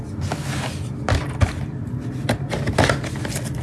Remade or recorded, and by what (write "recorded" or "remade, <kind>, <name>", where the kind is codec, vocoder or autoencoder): recorded